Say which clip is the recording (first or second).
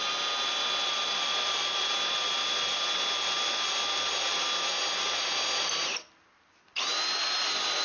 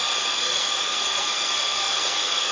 first